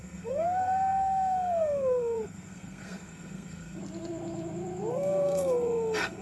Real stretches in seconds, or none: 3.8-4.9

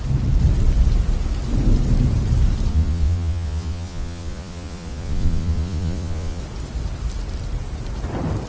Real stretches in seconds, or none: 0.0-2.7; 6.4-8.5

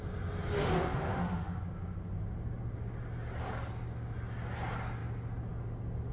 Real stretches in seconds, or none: 0.0-0.6; 1.6-6.1

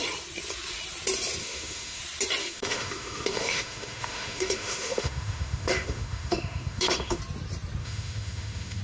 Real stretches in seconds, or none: 0.0-1.4; 2.0-2.4; 7.2-7.8

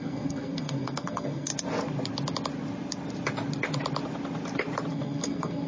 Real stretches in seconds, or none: 1.5-4.9